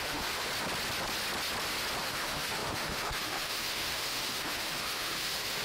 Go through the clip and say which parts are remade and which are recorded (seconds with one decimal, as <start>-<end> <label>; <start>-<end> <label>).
0.0-0.5 remade; 0.5-2.0 recorded; 2.0-5.6 remade